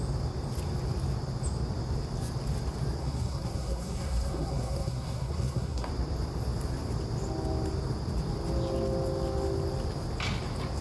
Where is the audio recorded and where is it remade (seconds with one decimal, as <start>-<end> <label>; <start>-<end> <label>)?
0.0-3.0 recorded; 3.0-5.9 remade; 5.9-10.8 recorded